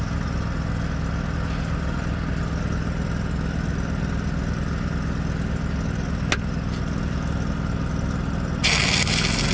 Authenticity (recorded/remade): recorded